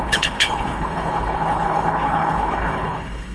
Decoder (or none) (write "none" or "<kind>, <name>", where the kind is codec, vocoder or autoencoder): codec, HILCodec